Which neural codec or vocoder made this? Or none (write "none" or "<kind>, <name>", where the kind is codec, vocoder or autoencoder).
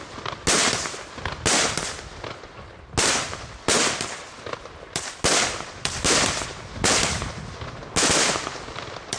none